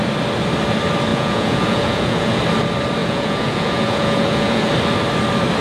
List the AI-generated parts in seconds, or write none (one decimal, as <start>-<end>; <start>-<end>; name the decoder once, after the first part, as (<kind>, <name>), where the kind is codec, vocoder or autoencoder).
1.1-2.4 (vocoder, Vocos); 3.0-4.7